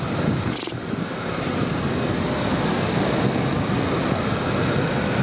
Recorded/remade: recorded